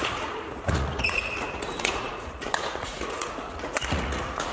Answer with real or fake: fake